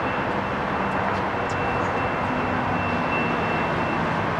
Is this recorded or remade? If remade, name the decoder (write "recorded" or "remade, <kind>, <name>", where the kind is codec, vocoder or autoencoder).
recorded